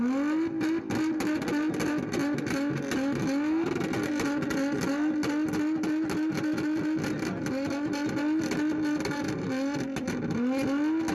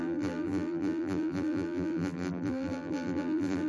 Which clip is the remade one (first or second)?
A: second